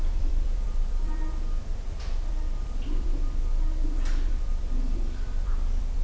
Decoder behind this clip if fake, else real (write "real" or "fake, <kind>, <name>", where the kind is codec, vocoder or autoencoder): fake, vocoder, BigVGAN v2